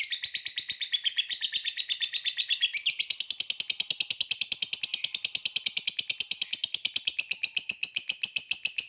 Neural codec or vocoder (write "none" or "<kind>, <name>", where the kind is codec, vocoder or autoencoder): none